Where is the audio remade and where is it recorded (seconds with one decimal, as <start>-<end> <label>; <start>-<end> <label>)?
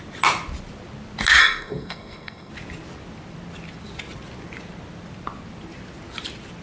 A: 0.0-1.4 recorded; 1.4-2.5 remade; 2.5-6.6 recorded